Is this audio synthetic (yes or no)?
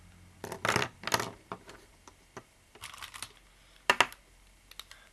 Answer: no